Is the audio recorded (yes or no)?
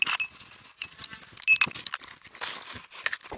yes